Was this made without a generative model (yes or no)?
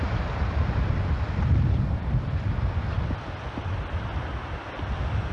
yes